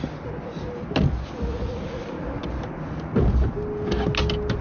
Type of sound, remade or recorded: recorded